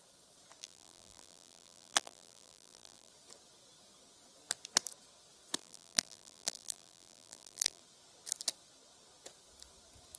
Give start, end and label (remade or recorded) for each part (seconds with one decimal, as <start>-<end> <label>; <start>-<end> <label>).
0.0-0.6 recorded; 0.6-3.1 remade; 3.1-5.6 recorded; 5.6-7.8 remade; 7.8-10.2 recorded